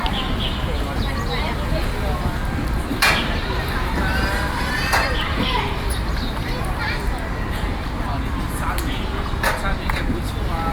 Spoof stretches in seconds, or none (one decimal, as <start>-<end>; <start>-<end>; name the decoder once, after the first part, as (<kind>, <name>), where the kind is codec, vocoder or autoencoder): 2.9-6.7 (vocoder, BigVGAN v2)